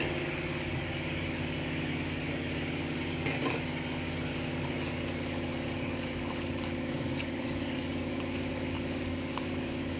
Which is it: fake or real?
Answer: fake